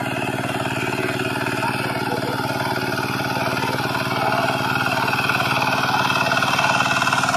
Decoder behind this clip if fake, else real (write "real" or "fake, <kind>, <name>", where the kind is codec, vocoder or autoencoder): real